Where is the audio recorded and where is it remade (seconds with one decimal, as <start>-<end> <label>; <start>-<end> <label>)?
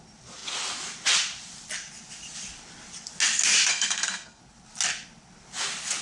0.0-3.7 recorded; 3.7-4.4 remade; 4.4-6.0 recorded